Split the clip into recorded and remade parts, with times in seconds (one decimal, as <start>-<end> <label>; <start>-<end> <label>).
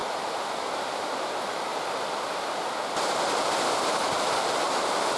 0.0-1.1 remade; 1.1-5.2 recorded